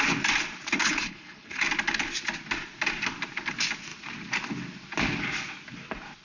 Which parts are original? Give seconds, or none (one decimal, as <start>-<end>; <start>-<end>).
0.0-0.8; 1.6-6.2